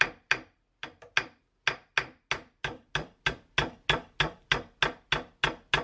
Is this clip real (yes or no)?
yes